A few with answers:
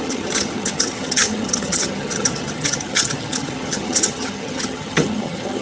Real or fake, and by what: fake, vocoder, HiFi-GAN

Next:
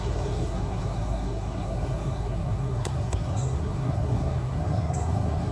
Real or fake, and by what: fake, codec, SNAC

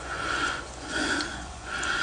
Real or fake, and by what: fake, vocoder, Vocos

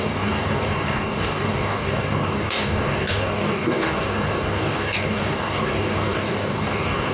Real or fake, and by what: fake, codec, DAC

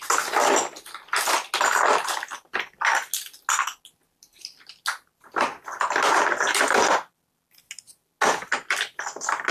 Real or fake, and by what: real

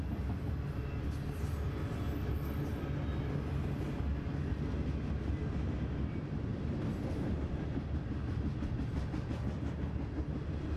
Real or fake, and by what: real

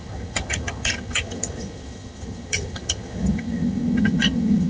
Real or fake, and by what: fake, vocoder, HiFi-GAN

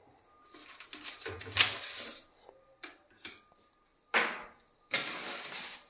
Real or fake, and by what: real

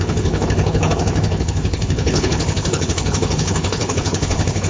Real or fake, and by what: fake, codec, HILCodec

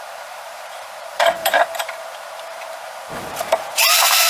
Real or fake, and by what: fake, vocoder, BigVGAN v2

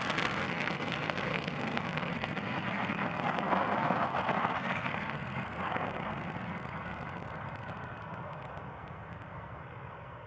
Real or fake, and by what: fake, codec, SNAC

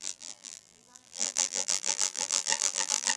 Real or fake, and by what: fake, vocoder, BigVGAN v2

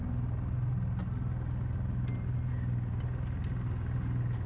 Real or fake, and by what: real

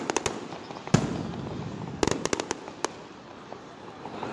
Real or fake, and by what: real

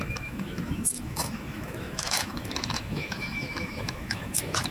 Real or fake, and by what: fake, autoencoder, DAC-VAE